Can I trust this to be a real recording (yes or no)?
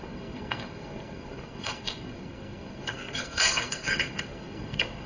no